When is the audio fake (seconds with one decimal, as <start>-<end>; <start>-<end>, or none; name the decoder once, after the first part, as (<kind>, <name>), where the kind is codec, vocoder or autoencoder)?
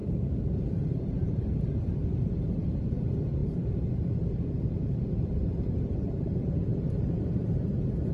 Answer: 0.0-8.1 (vocoder, BigVGAN v2)